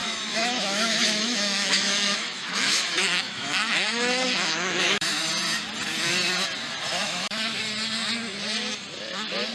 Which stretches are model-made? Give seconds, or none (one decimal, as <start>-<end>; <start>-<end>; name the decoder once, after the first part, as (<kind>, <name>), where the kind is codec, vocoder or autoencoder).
0.0-5.3 (autoencoder, DAC-VAE); 7.0-7.6